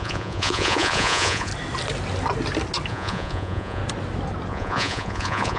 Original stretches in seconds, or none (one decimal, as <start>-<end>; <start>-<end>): 1.5-2.9; 3.8-4.5